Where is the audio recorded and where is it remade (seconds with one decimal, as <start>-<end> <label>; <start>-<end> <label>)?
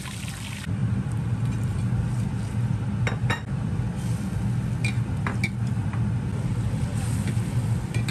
0.0-8.1 recorded